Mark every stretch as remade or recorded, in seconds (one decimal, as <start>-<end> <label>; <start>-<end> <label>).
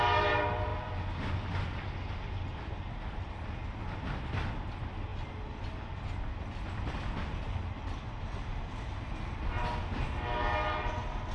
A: 0.0-11.3 recorded